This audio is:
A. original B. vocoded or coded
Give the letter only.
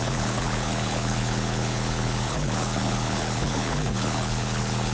B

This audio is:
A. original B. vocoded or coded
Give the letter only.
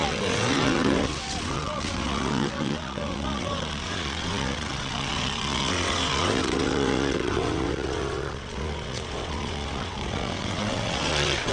B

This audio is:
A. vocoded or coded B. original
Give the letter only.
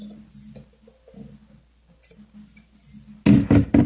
B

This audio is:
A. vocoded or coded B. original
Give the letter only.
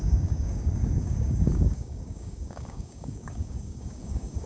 A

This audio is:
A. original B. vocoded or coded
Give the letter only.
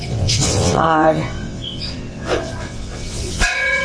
B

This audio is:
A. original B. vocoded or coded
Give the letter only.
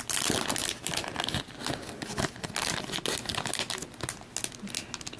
A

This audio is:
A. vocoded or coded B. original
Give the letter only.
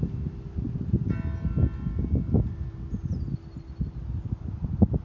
B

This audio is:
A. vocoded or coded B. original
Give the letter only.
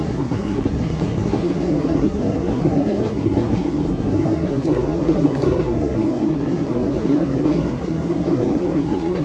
A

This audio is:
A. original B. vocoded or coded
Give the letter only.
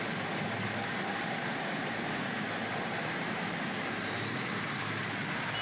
A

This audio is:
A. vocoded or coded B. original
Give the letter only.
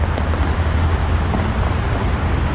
B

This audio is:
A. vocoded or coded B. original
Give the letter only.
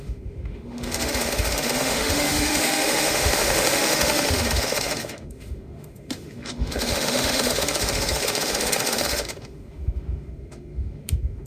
A